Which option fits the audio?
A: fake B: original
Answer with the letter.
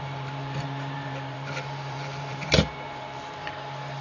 A